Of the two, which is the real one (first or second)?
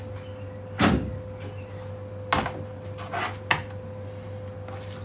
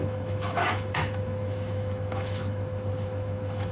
first